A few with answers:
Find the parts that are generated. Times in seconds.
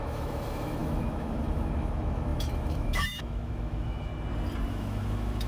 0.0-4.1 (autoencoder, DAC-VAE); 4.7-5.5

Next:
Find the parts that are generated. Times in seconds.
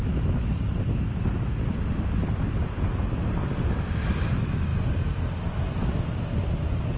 none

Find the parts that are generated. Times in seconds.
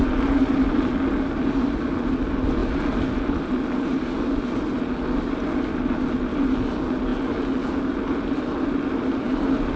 none